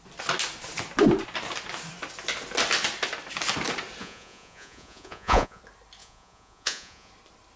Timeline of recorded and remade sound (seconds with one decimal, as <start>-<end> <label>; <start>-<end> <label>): 0.0-4.0 recorded; 4.0-5.6 remade; 5.6-6.0 recorded; 6.0-7.1 remade; 7.1-7.6 recorded